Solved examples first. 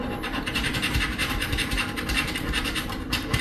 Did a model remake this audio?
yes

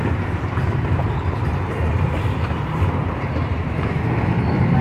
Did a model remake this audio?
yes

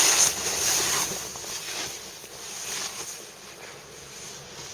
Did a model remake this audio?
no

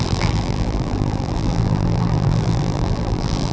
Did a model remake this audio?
yes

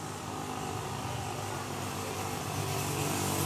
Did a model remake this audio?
no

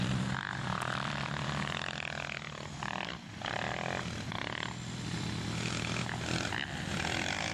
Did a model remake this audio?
yes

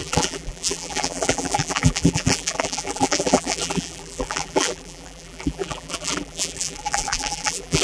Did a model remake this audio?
yes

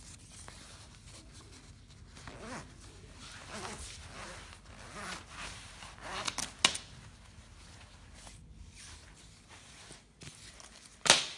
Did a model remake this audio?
no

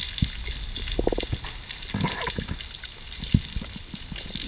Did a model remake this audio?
no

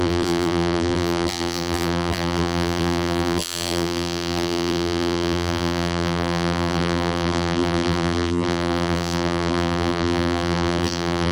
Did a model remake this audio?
yes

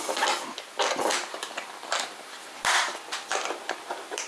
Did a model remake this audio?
yes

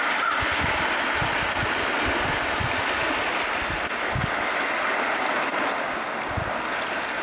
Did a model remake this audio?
no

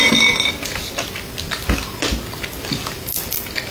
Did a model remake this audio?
no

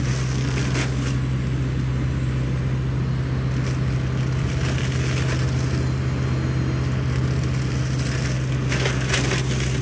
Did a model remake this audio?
no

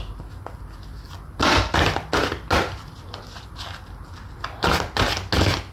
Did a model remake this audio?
no